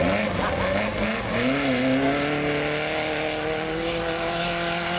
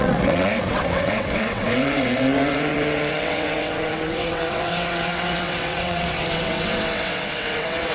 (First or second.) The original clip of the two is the first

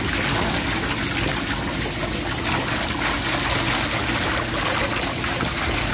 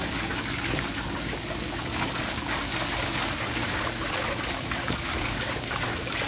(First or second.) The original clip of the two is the first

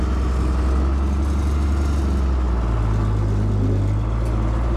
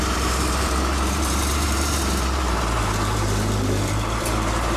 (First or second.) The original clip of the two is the first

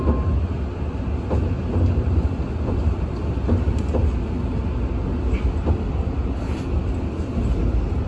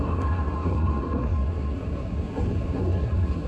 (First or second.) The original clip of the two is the first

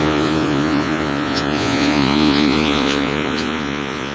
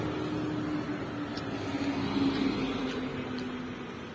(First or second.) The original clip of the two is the second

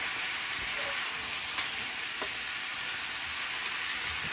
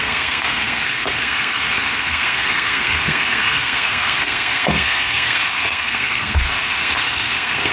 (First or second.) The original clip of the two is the first